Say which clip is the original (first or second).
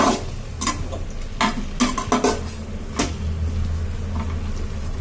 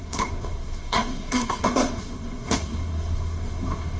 first